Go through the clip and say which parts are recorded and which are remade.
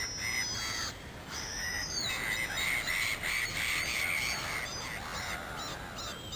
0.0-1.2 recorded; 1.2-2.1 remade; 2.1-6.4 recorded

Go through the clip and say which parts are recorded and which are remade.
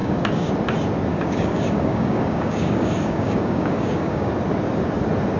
0.0-0.5 remade; 0.5-1.1 recorded; 1.1-4.3 remade; 4.3-5.4 recorded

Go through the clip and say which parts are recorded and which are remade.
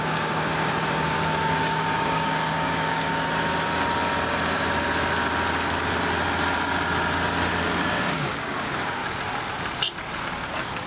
0.0-3.1 remade; 3.1-7.8 recorded; 7.8-9.0 remade; 9.0-10.2 recorded; 10.2-10.9 remade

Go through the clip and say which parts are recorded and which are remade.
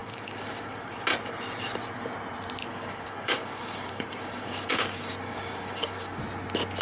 0.0-0.9 remade; 0.9-2.7 recorded; 2.7-6.2 remade; 6.2-6.8 recorded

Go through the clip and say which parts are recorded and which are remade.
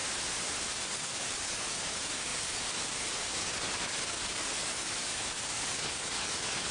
0.0-0.6 recorded; 0.6-6.7 remade